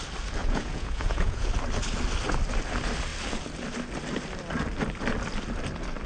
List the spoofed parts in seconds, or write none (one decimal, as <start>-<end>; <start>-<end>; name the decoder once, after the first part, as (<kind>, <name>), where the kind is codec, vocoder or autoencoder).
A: 0.4-1.5 (vocoder, Vocos)